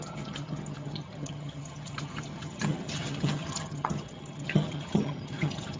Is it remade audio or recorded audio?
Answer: remade